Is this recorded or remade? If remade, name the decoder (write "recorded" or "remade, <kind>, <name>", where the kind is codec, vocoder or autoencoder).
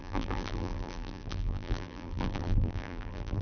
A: remade, vocoder, BigVGAN v2